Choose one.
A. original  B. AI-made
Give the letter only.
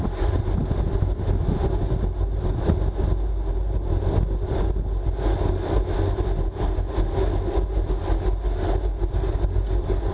A